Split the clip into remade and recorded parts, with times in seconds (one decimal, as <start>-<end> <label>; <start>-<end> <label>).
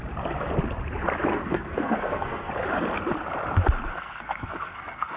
0.0-1.3 recorded; 1.3-2.5 remade; 2.5-3.9 recorded; 3.9-5.2 remade